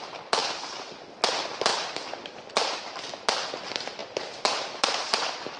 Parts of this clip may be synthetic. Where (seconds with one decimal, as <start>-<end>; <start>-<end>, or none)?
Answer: 1.7-3.0; 4.0-5.6